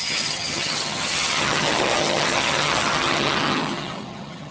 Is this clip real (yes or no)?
no